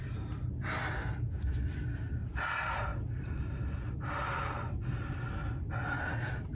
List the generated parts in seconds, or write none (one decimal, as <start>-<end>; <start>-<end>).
none